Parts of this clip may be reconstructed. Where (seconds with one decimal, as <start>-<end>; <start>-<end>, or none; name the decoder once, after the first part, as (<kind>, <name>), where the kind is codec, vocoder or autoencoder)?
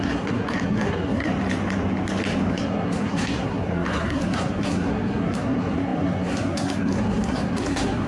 0.0-1.3 (codec, SNAC); 2.5-8.1